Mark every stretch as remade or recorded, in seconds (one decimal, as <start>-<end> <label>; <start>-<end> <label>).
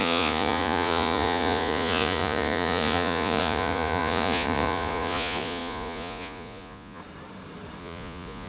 0.0-7.0 remade; 7.0-7.8 recorded; 7.8-8.5 remade